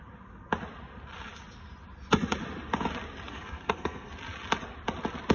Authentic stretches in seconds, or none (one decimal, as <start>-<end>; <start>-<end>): 0.0-3.3; 4.1-5.3